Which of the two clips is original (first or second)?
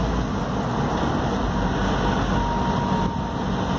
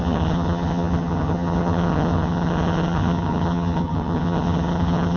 first